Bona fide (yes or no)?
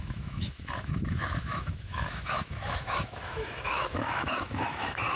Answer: no